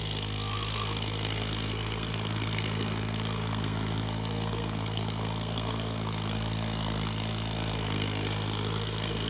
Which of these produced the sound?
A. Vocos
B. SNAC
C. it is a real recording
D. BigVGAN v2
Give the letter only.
B